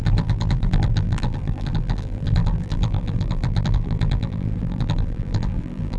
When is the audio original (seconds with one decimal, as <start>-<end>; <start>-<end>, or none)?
none